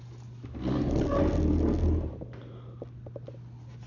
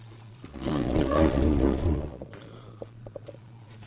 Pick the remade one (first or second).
second